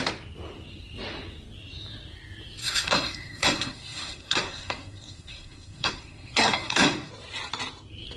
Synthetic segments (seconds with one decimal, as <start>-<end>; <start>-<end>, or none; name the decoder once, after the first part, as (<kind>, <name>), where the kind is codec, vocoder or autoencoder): 2.6-7.1 (codec, SNAC)